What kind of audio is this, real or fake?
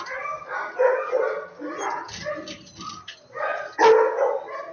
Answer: real